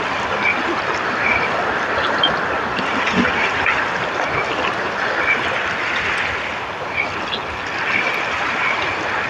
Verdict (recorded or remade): recorded